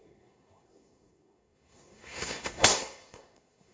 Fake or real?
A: fake